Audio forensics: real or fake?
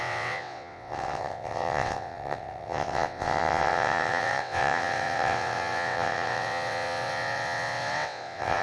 fake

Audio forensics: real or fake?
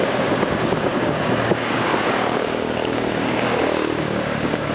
fake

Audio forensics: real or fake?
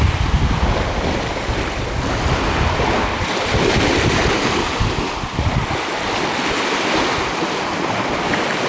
real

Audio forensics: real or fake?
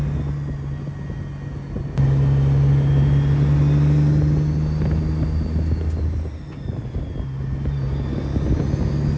real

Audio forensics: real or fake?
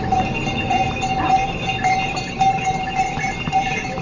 fake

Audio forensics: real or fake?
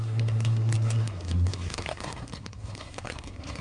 fake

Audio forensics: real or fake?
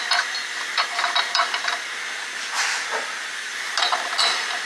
real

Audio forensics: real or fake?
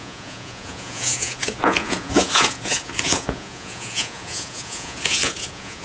fake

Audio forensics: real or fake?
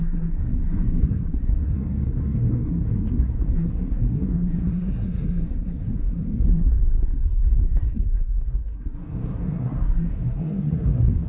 fake